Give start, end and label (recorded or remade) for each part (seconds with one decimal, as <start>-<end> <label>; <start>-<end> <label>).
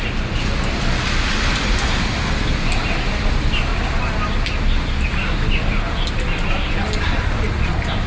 0.0-8.1 recorded